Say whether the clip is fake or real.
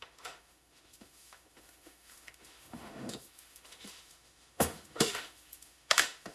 fake